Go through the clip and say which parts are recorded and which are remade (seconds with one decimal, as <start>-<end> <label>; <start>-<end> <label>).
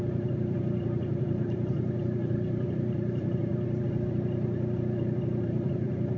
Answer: 0.0-3.5 remade; 3.5-5.4 recorded; 5.4-6.2 remade